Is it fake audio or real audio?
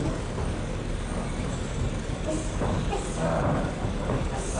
fake